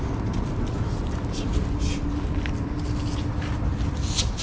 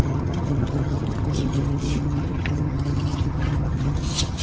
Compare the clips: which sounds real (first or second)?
first